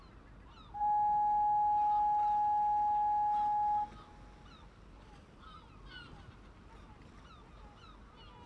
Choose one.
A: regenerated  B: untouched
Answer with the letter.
B